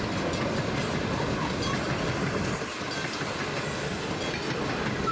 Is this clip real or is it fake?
real